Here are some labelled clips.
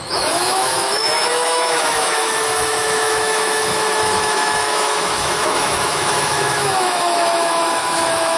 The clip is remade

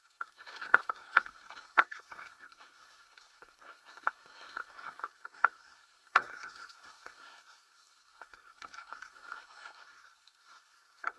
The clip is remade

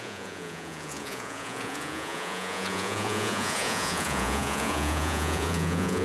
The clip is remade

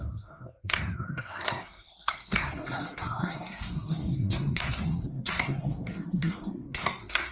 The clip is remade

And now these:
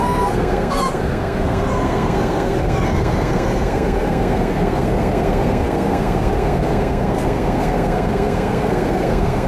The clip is remade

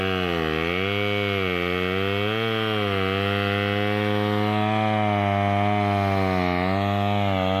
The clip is recorded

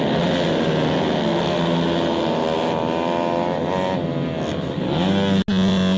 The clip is recorded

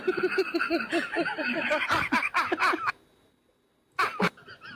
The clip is recorded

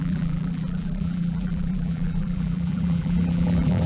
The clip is remade